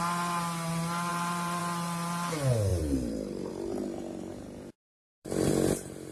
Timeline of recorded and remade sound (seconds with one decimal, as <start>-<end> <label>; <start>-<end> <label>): 0.0-1.1 recorded; 1.1-1.6 remade; 1.6-2.7 recorded; 2.7-3.5 remade; 3.5-4.3 recorded; 4.3-5.5 remade; 5.5-6.1 recorded